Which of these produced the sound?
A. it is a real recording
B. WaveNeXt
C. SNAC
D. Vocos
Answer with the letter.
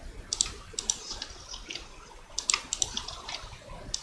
A